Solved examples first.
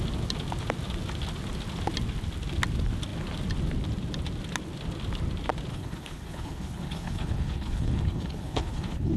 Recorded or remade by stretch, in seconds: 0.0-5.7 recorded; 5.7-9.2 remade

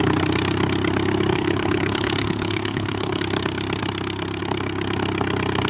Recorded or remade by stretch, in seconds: 0.0-1.3 recorded; 1.3-3.2 remade; 3.2-5.7 recorded

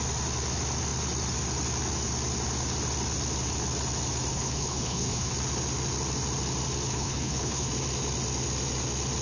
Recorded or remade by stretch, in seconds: 0.0-4.3 recorded; 4.3-5.3 remade; 5.3-6.9 recorded; 6.9-7.7 remade; 7.7-9.2 recorded

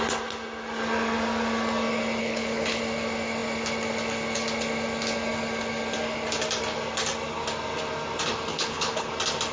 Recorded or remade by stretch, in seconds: 0.0-2.2 recorded; 2.2-2.8 remade; 2.8-8.5 recorded; 8.5-9.1 remade; 9.1-9.5 recorded

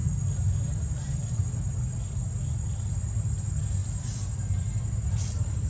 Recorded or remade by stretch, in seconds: 0.0-5.7 recorded

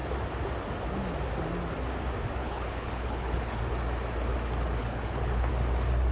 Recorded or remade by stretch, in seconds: 0.0-2.4 recorded; 2.4-3.6 remade; 3.6-4.8 recorded; 4.8-5.5 remade; 5.5-6.1 recorded

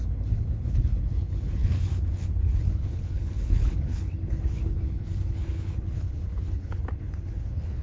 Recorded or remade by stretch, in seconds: 0.0-7.8 remade

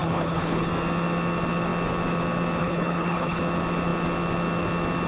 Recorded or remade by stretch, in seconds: 0.0-0.7 remade; 0.7-2.6 recorded; 2.6-3.4 remade; 3.4-5.1 recorded